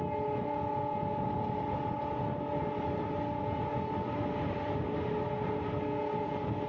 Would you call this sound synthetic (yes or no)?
no